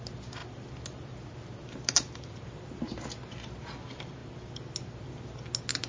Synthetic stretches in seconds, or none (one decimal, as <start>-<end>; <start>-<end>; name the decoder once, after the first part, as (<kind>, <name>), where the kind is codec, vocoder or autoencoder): none